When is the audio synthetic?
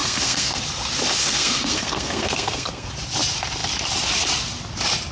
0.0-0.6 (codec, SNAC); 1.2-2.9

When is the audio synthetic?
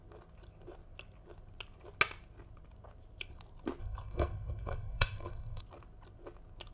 3.8-5.6 (codec, SNAC)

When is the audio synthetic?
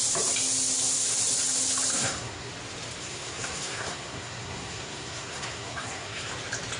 1.9-2.5 (codec, SNAC); 3.0-6.3